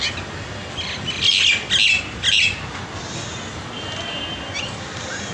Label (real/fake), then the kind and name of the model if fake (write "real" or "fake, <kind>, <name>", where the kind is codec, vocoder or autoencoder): real